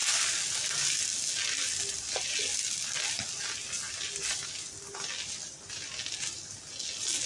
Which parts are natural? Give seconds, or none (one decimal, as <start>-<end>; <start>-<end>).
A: 0.0-7.3